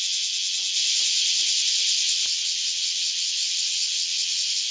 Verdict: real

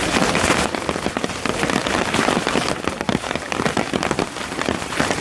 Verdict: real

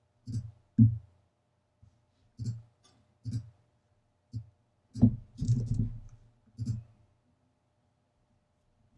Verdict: real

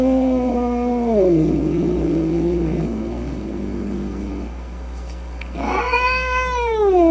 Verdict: fake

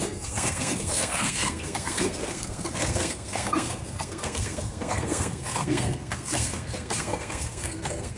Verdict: fake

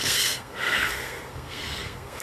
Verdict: fake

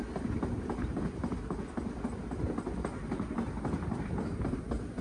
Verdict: real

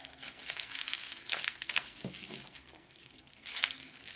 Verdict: fake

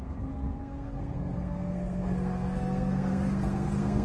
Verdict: fake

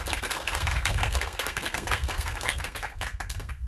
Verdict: fake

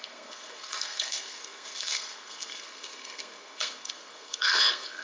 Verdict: fake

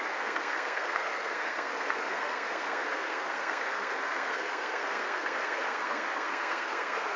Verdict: fake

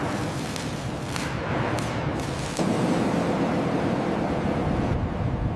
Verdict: real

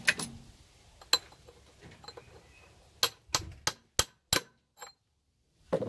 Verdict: real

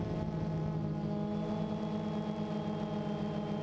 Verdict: real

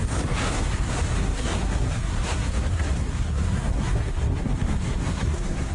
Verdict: fake